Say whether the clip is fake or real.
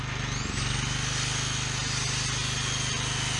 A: real